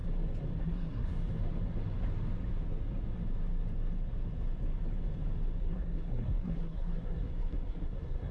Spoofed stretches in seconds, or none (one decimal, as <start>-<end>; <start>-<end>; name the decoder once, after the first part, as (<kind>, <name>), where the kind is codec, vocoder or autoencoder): 0.6-1.1 (codec, SNAC); 5.6-8.3